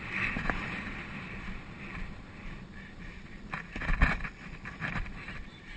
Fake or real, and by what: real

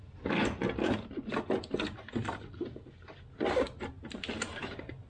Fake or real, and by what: real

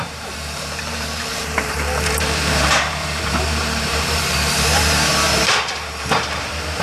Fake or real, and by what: fake, vocoder, BigVGAN v2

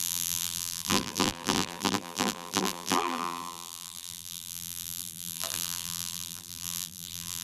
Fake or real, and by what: fake, vocoder, BigVGAN v2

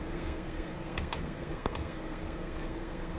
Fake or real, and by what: fake, codec, SNAC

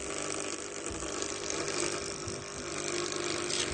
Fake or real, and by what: real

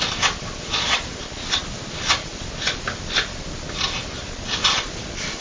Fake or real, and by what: real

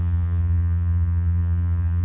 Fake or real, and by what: fake, vocoder, Vocos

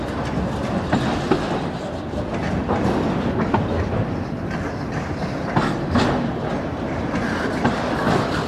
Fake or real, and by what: real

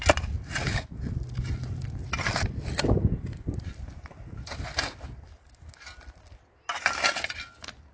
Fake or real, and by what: real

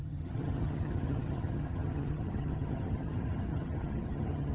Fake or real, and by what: fake, vocoder, HiFi-GAN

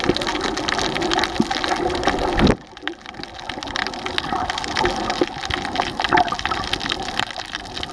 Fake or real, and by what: real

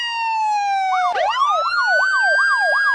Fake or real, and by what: real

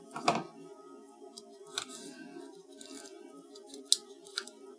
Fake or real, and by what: real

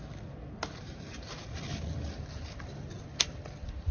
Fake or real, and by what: real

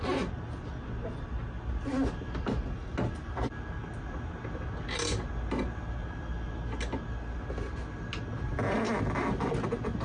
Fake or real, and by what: real